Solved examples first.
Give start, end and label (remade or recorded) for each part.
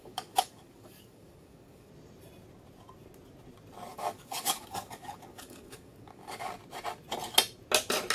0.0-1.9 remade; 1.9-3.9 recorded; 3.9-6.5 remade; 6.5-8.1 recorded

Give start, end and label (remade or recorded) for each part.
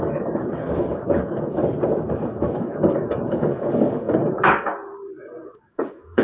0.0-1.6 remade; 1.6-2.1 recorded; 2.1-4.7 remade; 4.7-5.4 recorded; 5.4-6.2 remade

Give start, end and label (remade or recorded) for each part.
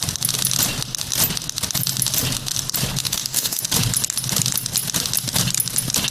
0.0-3.0 recorded; 3.0-3.6 remade; 3.6-6.1 recorded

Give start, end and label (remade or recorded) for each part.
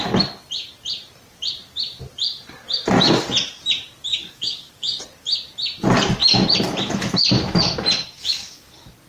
0.0-4.1 recorded; 4.1-5.0 remade; 5.0-8.2 recorded; 8.2-8.7 remade; 8.7-9.1 recorded